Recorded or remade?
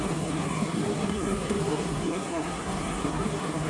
remade